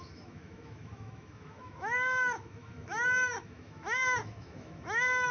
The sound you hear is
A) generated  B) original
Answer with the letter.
A